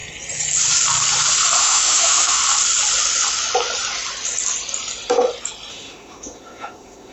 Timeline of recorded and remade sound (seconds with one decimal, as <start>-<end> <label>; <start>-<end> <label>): 0.0-1.6 recorded; 1.6-2.4 remade; 2.4-5.7 recorded; 5.7-7.1 remade